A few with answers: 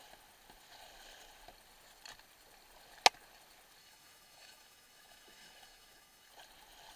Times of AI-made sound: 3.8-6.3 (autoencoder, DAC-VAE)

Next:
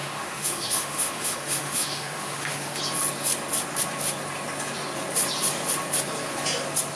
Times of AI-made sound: 0.0-2.8 (autoencoder, DAC-VAE)

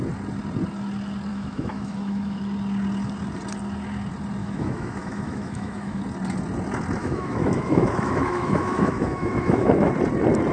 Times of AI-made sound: 1.3-2.4 (autoencoder, DAC-VAE); 4.4-6.0; 7.0-9.9

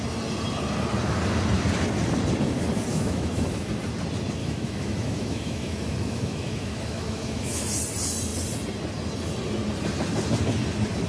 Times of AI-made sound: 2.9-3.5 (autoencoder, DAC-VAE); 4.4-7.6